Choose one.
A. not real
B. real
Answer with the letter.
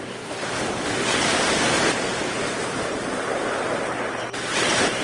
B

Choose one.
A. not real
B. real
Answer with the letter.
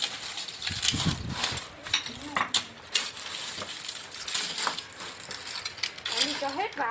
B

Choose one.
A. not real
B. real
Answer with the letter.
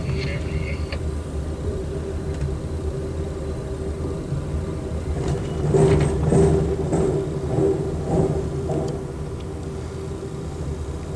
B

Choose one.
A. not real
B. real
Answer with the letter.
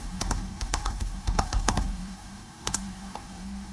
A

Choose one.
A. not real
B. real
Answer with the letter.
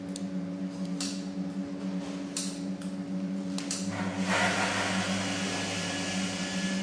B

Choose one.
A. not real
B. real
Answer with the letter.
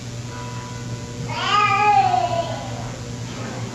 B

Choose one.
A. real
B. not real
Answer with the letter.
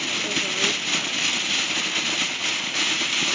A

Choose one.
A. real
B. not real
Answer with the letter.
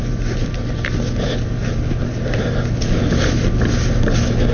A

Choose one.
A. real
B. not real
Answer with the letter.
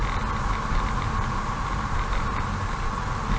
A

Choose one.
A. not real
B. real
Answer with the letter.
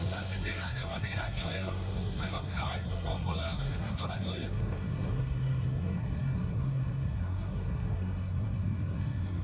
A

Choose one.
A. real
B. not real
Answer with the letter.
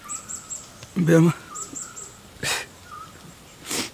A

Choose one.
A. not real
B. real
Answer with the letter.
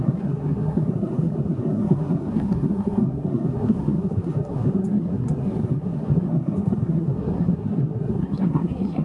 A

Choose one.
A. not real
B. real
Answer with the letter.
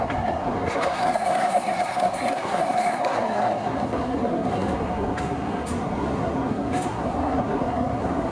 A